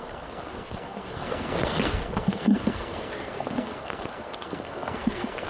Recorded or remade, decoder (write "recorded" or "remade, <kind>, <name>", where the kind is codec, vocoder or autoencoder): remade, codec, SNAC